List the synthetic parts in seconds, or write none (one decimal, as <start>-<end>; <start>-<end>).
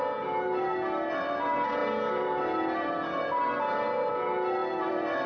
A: 4.6-5.3